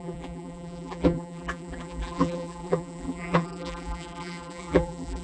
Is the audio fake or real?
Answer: fake